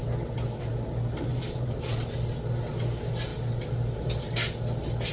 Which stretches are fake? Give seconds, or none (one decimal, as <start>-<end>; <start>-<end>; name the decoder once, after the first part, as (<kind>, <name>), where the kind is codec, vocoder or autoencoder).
1.3-2.1 (vocoder, BigVGAN v2)